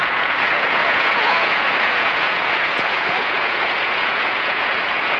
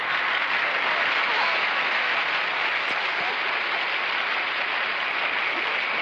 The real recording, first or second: second